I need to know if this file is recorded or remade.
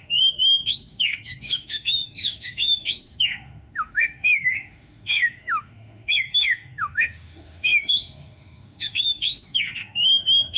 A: remade